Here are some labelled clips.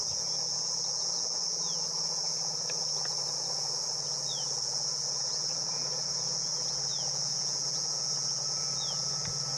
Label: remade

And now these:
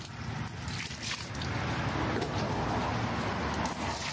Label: recorded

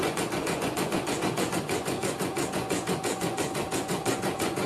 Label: remade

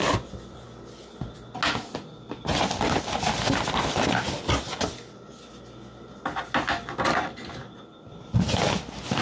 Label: recorded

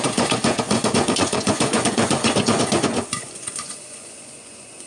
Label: remade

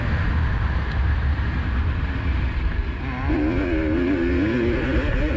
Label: recorded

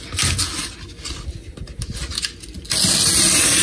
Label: recorded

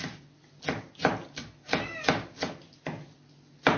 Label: recorded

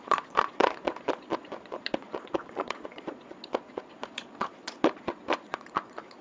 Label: remade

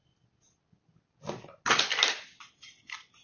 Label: recorded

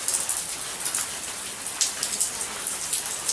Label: recorded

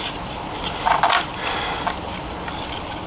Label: recorded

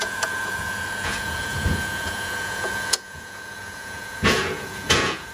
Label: remade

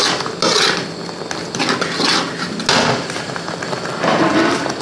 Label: recorded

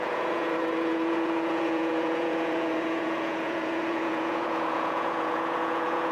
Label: remade